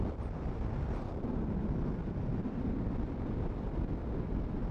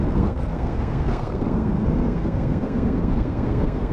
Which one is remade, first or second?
second